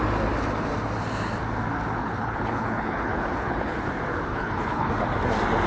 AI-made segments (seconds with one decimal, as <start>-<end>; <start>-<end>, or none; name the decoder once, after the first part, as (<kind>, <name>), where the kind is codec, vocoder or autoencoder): 2.0-3.9 (codec, HILCodec); 4.3-4.9